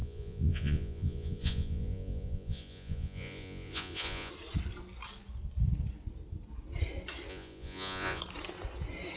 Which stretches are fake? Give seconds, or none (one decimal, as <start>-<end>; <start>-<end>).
0.0-4.3; 7.3-8.2